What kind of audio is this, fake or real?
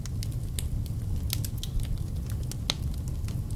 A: real